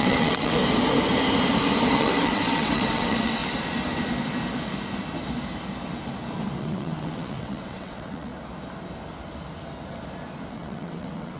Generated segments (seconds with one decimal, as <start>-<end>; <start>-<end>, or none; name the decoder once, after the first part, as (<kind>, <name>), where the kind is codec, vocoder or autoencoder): 0.0-0.6 (vocoder, WaveNeXt); 1.9-3.4; 6.6-8.3; 10.5-11.4